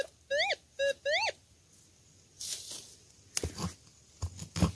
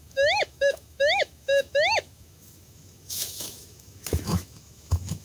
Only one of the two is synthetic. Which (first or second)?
second